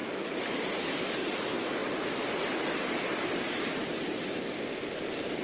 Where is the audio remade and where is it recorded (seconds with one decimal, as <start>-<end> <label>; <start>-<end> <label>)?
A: 0.0-5.4 recorded